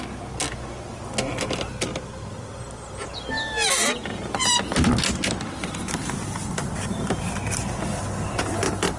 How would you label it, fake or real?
real